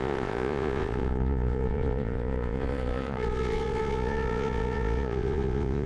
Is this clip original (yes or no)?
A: no